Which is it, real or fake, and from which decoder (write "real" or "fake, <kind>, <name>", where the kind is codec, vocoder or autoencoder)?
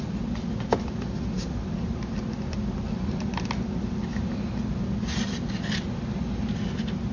real